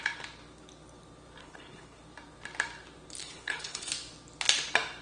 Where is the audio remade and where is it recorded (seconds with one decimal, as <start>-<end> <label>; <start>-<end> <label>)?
0.0-1.4 recorded; 1.4-2.0 remade; 2.0-3.2 recorded; 3.2-3.9 remade; 3.9-5.0 recorded